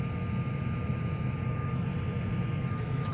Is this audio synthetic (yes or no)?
no